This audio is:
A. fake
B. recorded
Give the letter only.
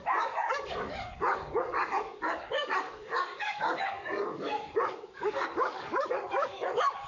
A